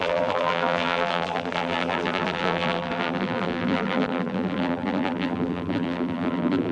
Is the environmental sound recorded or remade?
remade